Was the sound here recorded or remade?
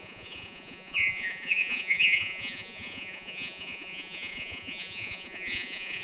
remade